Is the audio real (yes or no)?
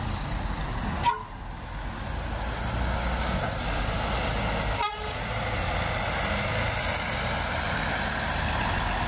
yes